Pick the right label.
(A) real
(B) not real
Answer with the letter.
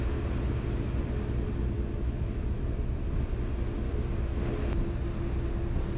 A